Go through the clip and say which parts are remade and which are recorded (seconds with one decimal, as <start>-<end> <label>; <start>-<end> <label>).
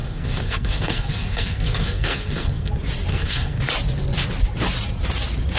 0.0-2.7 remade; 2.7-3.1 recorded; 3.1-3.6 remade; 3.6-5.6 recorded